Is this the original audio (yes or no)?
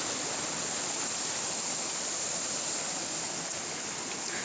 yes